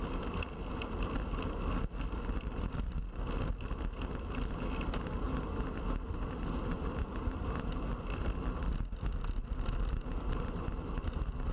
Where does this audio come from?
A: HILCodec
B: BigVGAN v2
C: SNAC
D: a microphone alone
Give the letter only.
D